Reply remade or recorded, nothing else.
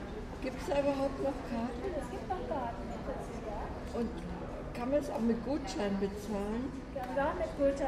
recorded